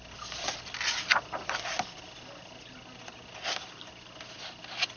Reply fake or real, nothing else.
real